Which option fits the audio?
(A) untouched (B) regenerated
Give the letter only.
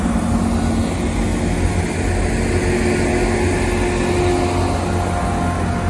A